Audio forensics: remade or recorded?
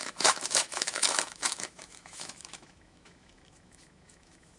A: remade